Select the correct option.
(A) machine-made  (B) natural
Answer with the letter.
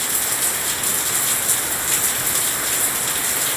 B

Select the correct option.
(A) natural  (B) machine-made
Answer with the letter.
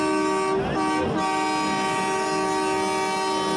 A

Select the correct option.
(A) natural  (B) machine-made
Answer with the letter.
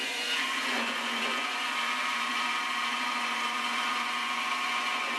B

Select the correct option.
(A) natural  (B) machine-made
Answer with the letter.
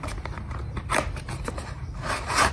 A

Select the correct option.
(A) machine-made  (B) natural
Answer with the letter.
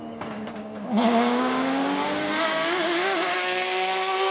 A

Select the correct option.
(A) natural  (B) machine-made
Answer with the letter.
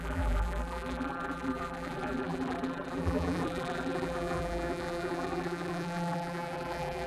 B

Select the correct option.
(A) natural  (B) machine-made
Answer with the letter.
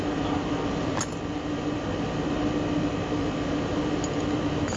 A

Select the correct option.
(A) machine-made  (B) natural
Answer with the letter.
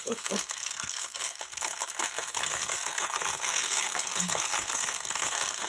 A